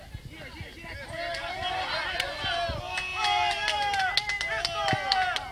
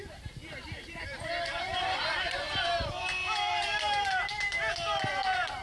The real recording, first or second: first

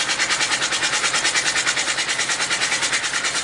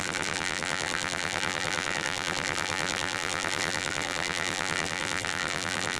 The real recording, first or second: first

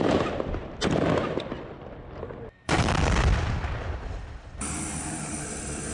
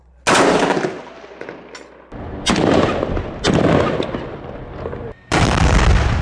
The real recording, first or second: second